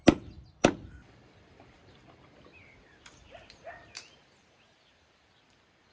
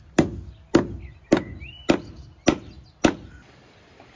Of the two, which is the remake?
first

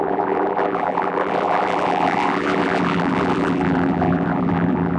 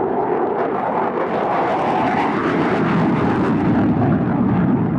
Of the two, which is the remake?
first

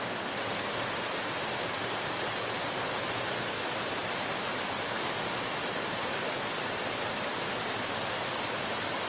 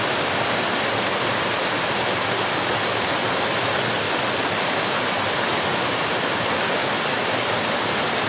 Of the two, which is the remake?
second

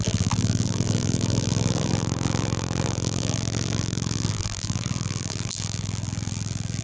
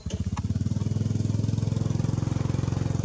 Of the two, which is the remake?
first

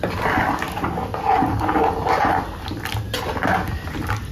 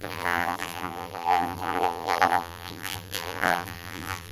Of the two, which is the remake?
second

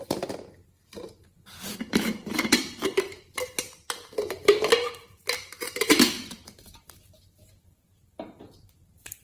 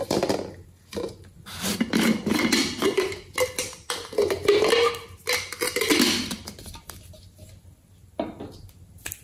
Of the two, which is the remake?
first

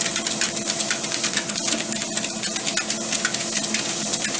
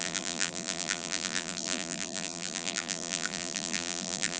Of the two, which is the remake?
second